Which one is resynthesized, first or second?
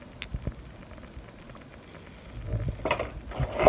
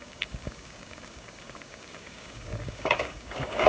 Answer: second